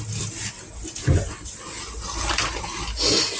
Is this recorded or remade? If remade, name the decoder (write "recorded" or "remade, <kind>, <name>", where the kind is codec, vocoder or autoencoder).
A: recorded